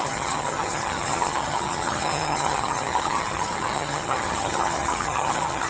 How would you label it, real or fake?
fake